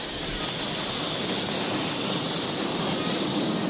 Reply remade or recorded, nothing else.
recorded